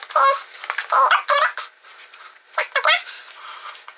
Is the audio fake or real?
real